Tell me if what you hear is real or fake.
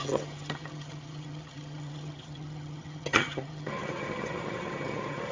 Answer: fake